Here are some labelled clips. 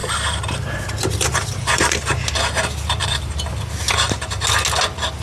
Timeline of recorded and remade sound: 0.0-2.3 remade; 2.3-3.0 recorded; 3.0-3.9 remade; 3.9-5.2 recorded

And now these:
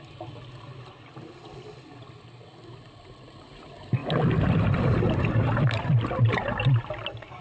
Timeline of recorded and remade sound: 0.0-7.4 recorded